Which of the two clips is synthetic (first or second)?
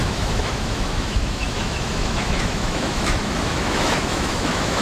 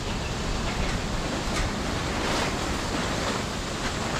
first